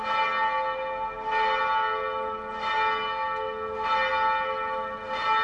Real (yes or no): yes